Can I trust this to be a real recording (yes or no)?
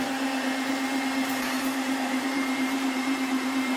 no